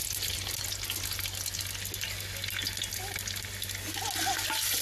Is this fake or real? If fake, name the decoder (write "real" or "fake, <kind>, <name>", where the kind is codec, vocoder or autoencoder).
real